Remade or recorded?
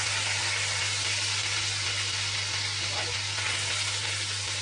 recorded